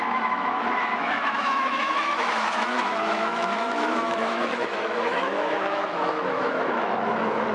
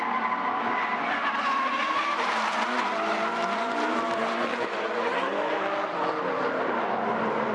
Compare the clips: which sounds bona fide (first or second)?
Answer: second